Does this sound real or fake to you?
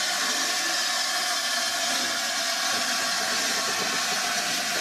real